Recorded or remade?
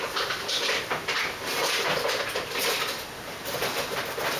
recorded